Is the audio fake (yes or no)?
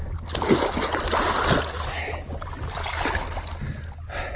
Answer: no